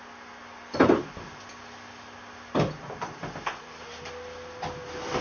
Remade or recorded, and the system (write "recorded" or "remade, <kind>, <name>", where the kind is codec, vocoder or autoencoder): recorded